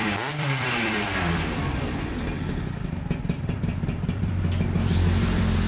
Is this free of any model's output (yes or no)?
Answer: no